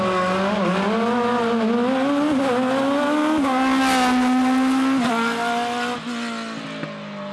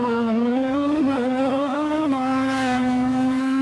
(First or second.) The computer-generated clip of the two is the second